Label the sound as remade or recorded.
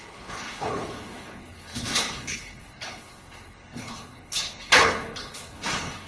remade